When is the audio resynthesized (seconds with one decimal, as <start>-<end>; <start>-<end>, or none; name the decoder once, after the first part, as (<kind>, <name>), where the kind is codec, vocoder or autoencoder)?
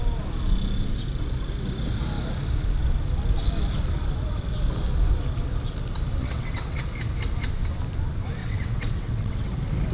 6.2-6.8 (vocoder, WaveNeXt); 8.4-9.5